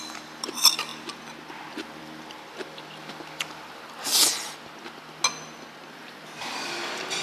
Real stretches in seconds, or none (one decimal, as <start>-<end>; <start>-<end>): 0.9-2.0; 4.1-5.9